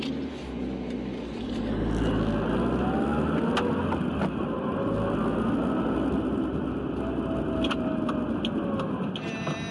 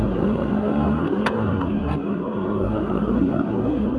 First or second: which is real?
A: first